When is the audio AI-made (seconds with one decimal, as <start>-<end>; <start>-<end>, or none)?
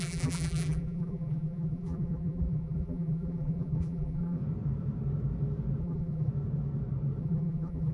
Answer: 0.0-4.4; 5.8-6.3; 7.2-7.9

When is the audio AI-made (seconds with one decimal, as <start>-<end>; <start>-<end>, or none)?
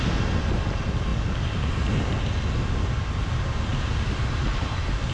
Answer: 3.7-4.3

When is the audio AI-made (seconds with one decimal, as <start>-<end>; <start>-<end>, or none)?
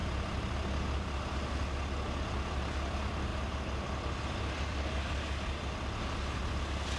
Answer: 0.0-0.5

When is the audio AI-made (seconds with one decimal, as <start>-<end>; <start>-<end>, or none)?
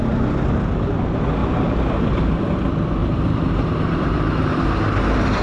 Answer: 1.4-2.3; 3.0-5.4